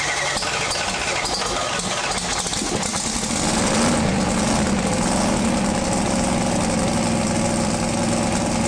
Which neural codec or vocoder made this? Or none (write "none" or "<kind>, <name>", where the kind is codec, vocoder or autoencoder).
none